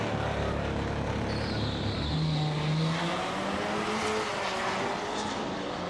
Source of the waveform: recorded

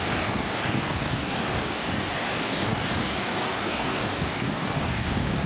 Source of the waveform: remade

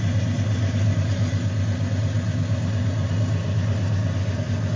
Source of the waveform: recorded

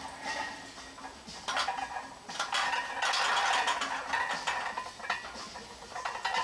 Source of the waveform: recorded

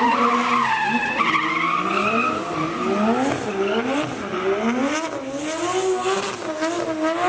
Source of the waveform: recorded